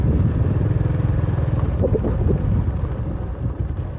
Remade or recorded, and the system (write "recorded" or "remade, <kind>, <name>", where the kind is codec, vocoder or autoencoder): recorded